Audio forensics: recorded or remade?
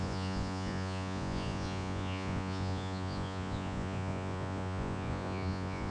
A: remade